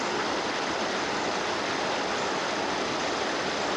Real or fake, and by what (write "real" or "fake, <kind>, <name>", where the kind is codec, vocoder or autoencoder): real